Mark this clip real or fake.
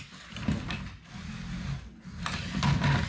real